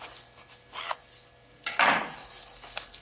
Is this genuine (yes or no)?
yes